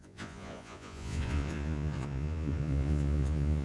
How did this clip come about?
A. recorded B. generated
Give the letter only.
B